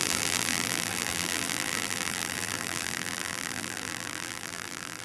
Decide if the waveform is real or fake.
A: fake